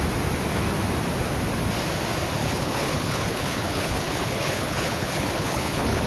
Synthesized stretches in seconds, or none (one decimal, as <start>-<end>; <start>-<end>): 2.4-6.1